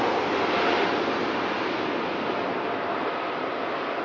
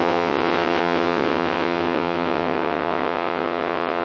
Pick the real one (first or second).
first